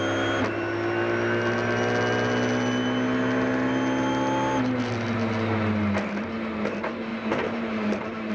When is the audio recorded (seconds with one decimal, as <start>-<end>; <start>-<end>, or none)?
0.0-7.1